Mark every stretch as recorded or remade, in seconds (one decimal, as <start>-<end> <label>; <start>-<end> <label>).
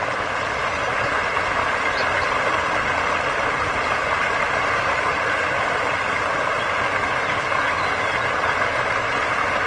0.0-9.7 recorded